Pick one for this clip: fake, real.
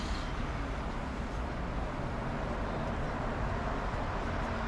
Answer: real